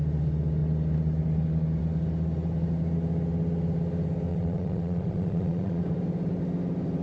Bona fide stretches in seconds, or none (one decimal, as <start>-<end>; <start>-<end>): 0.0-4.3; 5.8-7.0